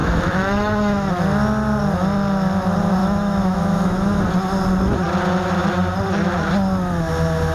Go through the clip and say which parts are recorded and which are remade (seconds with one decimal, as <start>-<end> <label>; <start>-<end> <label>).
0.0-1.1 remade; 1.1-3.0 recorded; 3.0-4.2 remade; 4.2-7.5 recorded